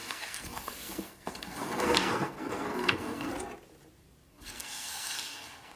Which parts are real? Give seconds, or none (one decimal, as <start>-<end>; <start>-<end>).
3.3-4.3